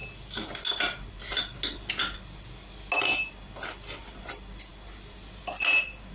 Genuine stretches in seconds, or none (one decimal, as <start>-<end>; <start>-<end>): 0.0-6.1